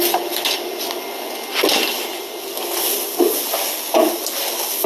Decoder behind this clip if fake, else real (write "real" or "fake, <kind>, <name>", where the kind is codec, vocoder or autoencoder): real